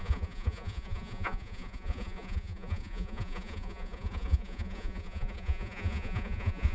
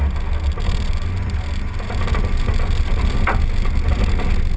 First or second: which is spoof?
first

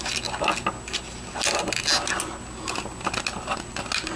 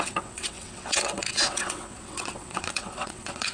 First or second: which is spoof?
second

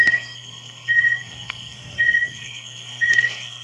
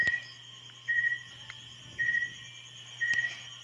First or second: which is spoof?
first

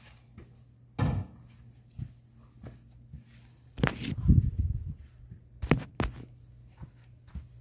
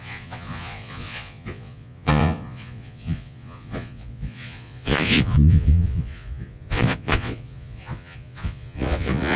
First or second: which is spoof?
second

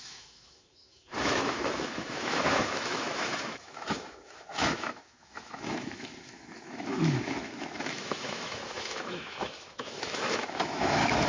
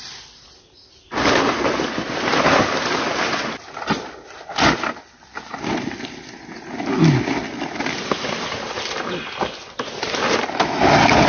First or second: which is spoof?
first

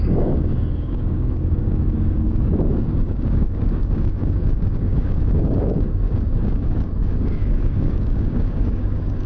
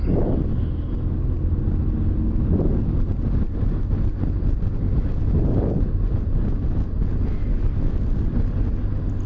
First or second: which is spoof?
first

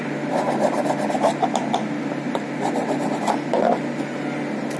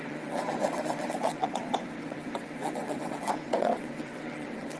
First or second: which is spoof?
second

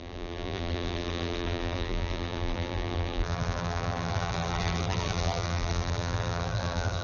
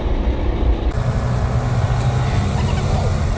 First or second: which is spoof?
first